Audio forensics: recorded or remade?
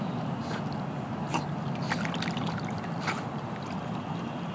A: recorded